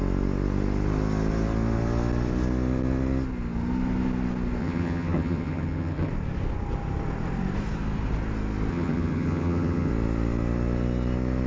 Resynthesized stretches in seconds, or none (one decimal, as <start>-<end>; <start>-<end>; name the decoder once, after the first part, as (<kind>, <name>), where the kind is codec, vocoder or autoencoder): 4.6-6.1 (vocoder, HiFi-GAN); 8.7-9.9